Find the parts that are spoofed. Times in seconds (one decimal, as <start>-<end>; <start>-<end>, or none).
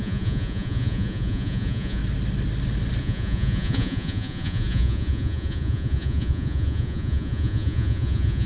0.0-2.0; 3.0-8.5